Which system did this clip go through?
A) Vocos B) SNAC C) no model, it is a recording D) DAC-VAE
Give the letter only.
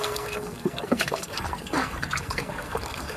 B